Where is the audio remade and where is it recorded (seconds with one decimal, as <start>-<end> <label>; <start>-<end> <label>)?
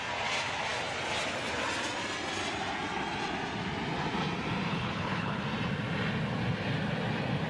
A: 0.0-4.7 recorded; 4.7-5.4 remade; 5.4-7.5 recorded